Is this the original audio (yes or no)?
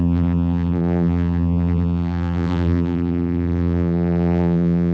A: no